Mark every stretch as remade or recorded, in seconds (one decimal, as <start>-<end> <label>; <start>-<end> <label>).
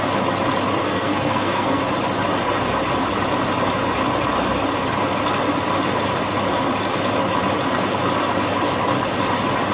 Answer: 0.0-0.8 recorded; 0.8-1.8 remade; 1.8-9.7 recorded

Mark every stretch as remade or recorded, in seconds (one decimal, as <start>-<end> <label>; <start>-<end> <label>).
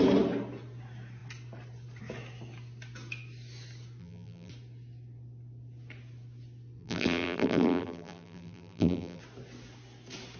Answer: 0.0-4.0 recorded; 4.0-4.5 remade; 4.5-6.8 recorded; 6.8-9.2 remade; 9.2-10.4 recorded